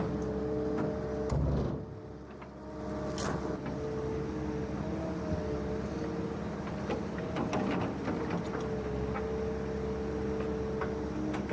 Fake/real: real